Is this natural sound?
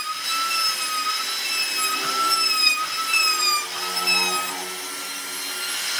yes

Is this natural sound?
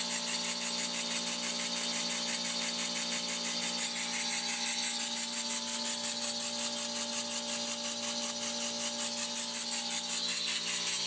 yes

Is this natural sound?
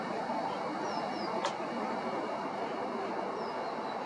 yes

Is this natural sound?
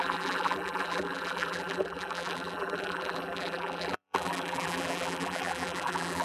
no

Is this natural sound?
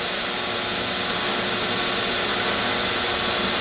yes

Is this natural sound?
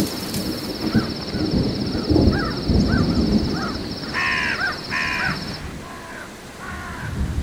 yes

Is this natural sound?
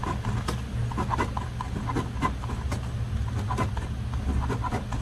yes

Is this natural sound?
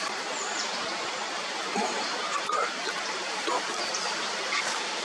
no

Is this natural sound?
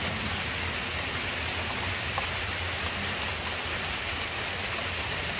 yes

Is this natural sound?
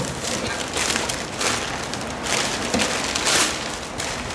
yes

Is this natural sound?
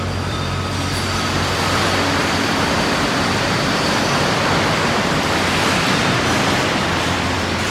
no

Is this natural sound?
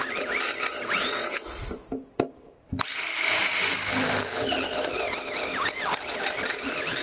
yes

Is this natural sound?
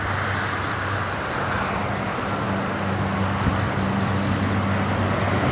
yes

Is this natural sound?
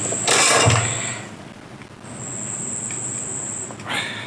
yes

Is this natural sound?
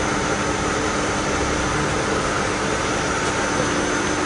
no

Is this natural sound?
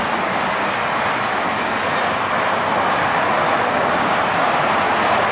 yes